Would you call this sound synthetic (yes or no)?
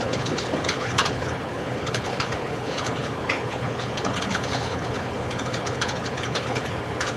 yes